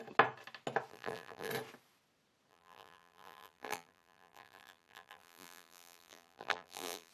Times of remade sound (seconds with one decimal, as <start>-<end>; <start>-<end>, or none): 0.9-1.5; 2.5-7.1

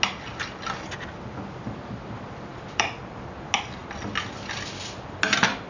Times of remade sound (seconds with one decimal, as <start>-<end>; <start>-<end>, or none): 2.5-3.0

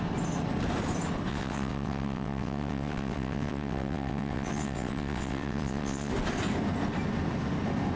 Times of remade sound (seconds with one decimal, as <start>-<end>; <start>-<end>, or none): 1.3-6.1

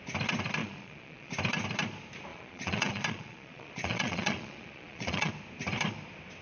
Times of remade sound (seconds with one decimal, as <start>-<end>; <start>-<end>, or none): 0.6-1.3; 2.3-5.3

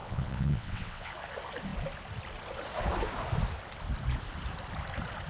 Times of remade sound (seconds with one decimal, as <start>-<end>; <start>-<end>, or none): 0.0-1.1

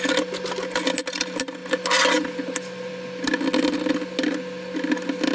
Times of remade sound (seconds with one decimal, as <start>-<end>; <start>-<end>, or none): none

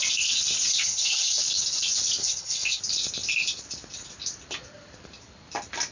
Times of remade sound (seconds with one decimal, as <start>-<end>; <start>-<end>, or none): 0.7-1.4; 2.2-2.8

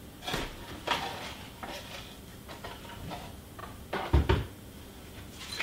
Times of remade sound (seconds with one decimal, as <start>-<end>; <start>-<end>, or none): none